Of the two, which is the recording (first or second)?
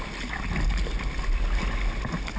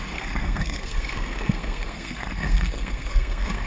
first